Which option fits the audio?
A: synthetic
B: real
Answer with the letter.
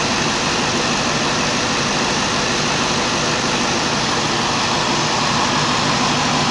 B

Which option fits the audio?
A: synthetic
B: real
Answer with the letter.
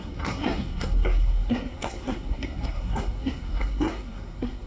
A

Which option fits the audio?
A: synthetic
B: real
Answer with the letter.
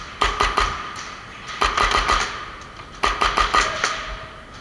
B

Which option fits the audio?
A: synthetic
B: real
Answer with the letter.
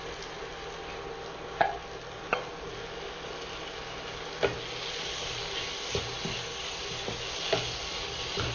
B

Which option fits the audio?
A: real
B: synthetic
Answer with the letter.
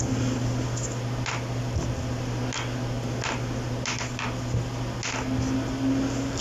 A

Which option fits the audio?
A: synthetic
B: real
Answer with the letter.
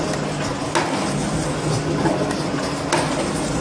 B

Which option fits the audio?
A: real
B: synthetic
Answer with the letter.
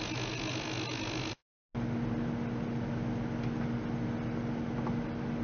A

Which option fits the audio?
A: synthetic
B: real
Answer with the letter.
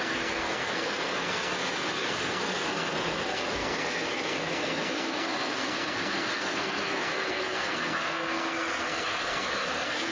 A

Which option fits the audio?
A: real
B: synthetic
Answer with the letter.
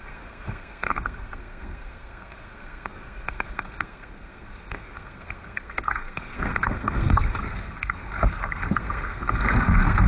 B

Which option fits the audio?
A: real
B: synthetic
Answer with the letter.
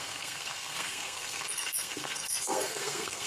B